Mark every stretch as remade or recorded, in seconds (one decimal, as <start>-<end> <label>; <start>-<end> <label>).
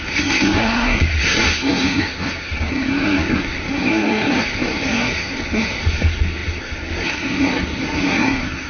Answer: 0.0-8.7 remade